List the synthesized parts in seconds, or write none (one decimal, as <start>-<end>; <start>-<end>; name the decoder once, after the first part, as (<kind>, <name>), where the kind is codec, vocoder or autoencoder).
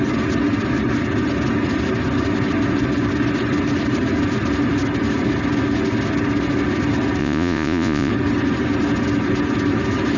7.2-8.1 (vocoder, Vocos)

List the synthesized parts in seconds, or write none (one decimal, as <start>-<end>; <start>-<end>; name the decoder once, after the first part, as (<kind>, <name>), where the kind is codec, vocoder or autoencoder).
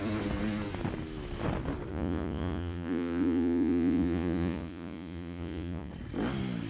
1.9-5.9 (vocoder, Vocos)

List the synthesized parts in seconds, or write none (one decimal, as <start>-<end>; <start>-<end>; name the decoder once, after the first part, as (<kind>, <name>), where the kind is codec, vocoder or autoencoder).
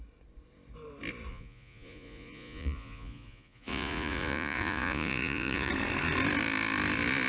1.3-5.7 (vocoder, Vocos)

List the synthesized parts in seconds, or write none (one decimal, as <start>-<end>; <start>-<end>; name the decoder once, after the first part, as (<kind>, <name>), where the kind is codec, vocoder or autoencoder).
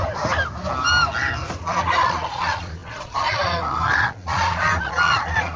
1.8-5.6 (vocoder, Vocos)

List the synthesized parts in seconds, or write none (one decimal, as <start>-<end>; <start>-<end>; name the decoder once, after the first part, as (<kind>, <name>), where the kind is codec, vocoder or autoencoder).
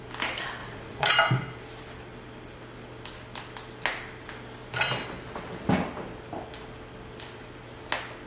0.6-1.1 (vocoder, Vocos)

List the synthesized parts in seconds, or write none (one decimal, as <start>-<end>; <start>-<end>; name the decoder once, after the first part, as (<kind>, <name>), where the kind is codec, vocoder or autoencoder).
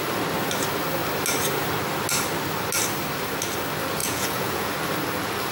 4.0-4.7 (vocoder, Vocos)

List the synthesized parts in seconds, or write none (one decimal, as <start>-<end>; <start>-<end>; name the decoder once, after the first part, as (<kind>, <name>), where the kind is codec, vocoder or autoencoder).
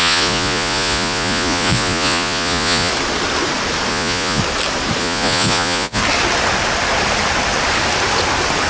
0.0-2.9 (vocoder, Vocos); 3.9-4.4; 5.0-6.0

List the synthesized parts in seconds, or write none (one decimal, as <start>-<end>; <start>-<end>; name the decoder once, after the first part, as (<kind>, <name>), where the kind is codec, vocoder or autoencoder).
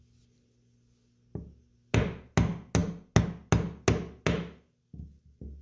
none